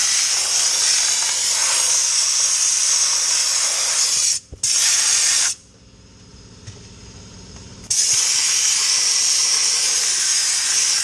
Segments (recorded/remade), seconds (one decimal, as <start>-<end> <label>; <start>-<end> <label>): 0.0-6.3 recorded; 6.3-7.9 remade; 7.9-9.6 recorded; 9.6-10.5 remade; 10.5-11.0 recorded